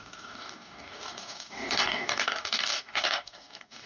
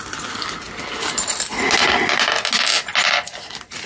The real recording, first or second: second